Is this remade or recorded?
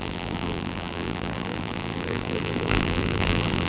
remade